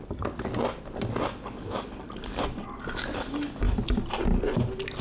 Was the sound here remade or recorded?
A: recorded